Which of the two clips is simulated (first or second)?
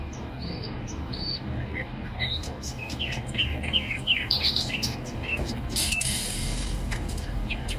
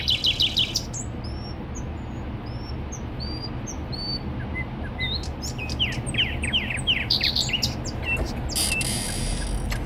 first